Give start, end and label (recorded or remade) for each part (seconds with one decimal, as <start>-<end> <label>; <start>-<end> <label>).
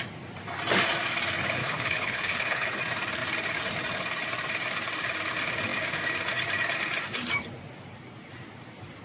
0.0-1.6 recorded; 1.6-2.8 remade; 2.8-9.0 recorded